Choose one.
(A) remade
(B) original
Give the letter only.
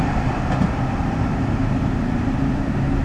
A